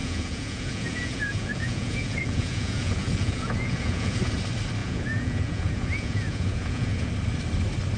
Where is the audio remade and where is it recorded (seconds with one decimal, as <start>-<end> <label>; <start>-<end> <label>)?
0.0-4.3 remade; 4.3-4.8 recorded; 4.8-7.1 remade; 7.1-8.0 recorded